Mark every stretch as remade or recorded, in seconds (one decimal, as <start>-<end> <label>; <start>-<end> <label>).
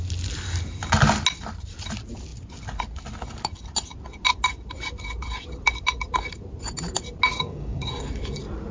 0.0-7.3 recorded; 7.3-7.9 remade; 7.9-8.7 recorded